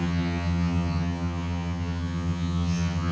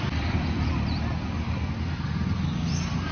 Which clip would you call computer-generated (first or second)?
first